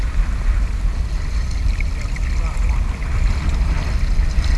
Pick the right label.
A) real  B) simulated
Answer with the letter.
A